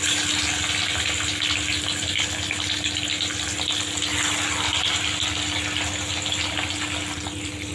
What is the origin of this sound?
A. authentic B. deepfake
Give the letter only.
A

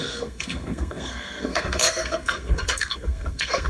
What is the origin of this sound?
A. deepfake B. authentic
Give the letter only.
A